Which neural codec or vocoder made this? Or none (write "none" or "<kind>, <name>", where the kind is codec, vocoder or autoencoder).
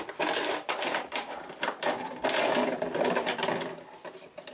none